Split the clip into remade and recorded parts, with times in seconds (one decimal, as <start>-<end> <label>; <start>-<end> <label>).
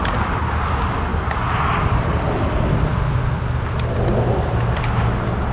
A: 0.0-1.1 recorded; 1.1-2.4 remade; 2.4-5.5 recorded